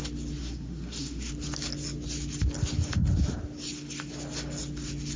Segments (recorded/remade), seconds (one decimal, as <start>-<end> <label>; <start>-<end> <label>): 0.0-0.4 recorded; 0.4-1.3 remade; 1.3-5.2 recorded